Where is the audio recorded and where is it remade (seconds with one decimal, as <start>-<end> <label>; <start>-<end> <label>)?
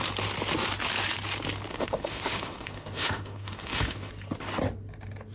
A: 0.0-1.7 recorded; 1.7-4.1 remade; 4.1-5.3 recorded